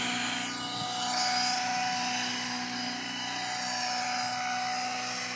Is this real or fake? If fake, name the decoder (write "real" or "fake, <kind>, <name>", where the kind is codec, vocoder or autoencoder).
real